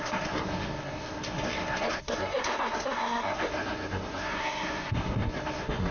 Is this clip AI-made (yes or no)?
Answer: yes